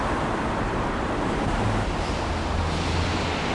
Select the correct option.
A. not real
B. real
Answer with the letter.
B